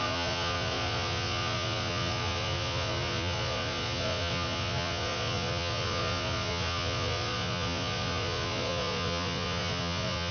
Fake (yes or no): yes